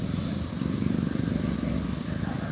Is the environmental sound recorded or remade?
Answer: recorded